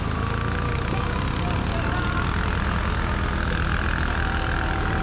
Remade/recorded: recorded